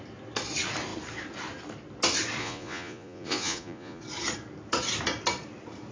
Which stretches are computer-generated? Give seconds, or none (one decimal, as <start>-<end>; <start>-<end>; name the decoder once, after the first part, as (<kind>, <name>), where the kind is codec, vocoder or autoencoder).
2.4-4.0 (vocoder, Vocos)